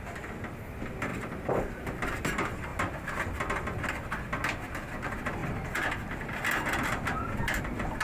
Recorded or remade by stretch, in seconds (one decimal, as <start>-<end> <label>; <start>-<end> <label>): 0.0-1.1 recorded; 1.1-2.2 remade; 2.2-8.0 recorded